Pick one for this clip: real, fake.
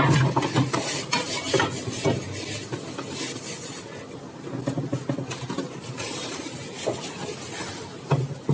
real